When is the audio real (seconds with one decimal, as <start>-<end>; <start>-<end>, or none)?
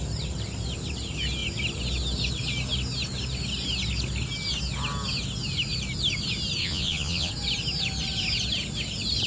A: 0.0-6.6; 7.3-9.3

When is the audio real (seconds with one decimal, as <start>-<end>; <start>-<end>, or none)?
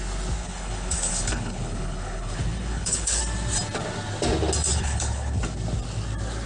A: 0.0-0.4; 3.2-4.7; 5.4-6.5